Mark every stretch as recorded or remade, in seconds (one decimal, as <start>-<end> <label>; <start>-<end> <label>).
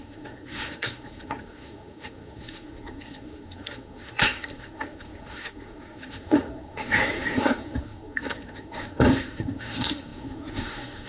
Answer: 0.0-11.1 remade